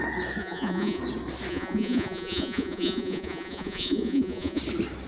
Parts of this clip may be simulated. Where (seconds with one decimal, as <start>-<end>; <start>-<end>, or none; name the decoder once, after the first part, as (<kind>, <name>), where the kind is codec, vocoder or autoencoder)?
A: 0.4-1.0 (vocoder, Vocos); 1.5-4.6